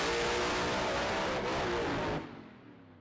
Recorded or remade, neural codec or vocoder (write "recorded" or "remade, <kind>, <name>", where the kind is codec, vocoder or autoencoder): recorded